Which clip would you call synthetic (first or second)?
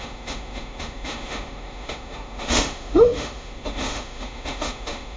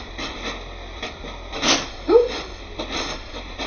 first